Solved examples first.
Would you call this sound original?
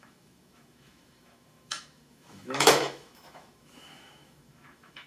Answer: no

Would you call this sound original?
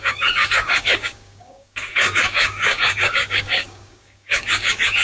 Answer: no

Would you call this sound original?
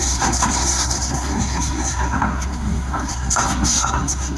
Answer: no